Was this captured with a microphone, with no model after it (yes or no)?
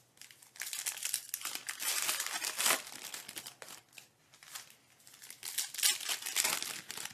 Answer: yes